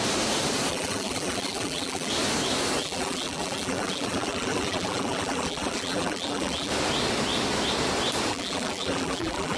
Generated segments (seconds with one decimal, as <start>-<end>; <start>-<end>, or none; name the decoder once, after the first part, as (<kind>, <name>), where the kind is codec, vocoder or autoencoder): 0.7-2.1 (vocoder, BigVGAN v2); 2.8-6.7; 8.3-9.6